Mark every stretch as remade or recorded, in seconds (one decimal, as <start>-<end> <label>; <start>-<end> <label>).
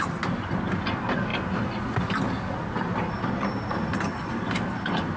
0.0-5.2 recorded